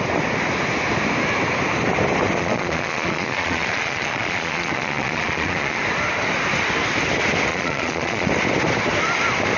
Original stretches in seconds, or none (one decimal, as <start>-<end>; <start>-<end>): 0.0-2.4; 5.8-7.5; 8.3-9.6